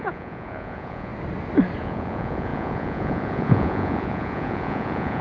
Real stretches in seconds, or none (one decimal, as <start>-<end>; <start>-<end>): 1.1-1.8